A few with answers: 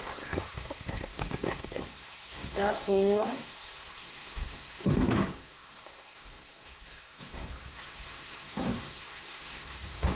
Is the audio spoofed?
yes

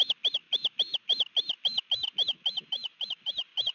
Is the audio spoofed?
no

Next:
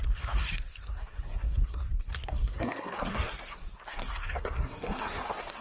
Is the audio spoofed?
yes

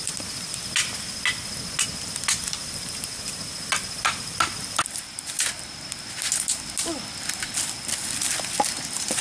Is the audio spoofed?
no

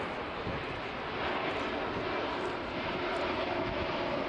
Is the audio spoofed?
no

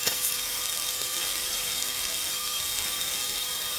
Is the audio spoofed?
yes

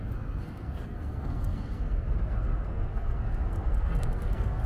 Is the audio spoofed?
yes